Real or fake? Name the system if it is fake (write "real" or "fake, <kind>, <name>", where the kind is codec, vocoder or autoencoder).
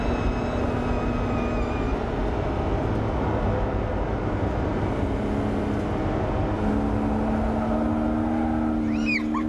real